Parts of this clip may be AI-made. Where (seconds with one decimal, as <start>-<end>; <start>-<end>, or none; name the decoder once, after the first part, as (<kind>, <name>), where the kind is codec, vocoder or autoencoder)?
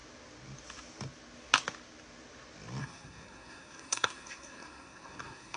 2.8-5.6 (codec, SNAC)